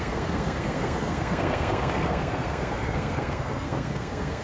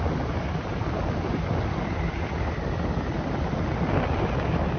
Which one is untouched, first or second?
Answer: second